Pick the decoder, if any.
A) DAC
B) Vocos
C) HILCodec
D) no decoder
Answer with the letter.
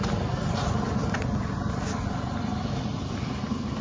D